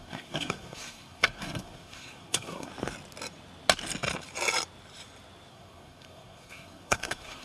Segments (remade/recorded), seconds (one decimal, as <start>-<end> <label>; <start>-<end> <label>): 0.0-2.7 remade; 2.7-5.5 recorded; 5.5-7.4 remade